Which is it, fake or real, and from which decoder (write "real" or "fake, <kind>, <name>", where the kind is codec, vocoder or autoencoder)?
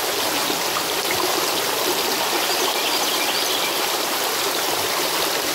fake, vocoder, BigVGAN v2